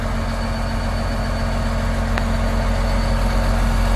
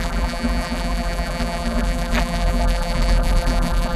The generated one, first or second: second